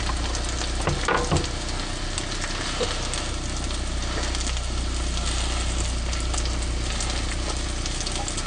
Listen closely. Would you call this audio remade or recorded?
recorded